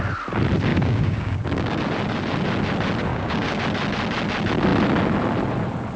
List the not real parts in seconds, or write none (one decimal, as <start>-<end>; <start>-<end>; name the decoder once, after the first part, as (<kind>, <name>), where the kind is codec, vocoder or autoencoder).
0.7-1.8 (codec, DAC); 3.1-3.6